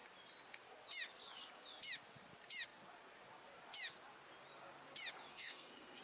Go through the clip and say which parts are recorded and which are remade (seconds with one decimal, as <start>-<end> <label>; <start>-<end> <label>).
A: 0.0-5.3 recorded; 5.3-6.0 remade